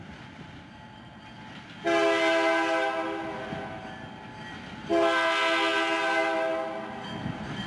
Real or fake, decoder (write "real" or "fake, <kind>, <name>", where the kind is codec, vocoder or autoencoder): real